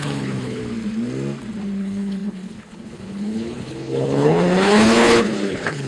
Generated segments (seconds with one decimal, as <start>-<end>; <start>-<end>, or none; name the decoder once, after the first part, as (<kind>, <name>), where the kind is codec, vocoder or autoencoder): 0.0-0.6 (codec, HILCodec); 1.8-5.9